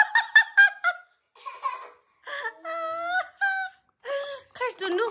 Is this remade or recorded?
recorded